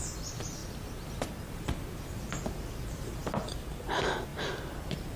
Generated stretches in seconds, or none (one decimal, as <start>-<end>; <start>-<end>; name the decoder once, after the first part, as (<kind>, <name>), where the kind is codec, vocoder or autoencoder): 0.6-1.9 (vocoder, BigVGAN v2); 4.3-5.2